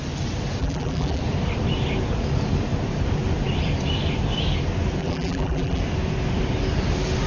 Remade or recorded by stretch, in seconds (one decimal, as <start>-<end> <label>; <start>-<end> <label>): 0.0-0.6 recorded; 0.6-1.2 remade; 1.2-5.0 recorded; 5.0-5.8 remade; 5.8-7.3 recorded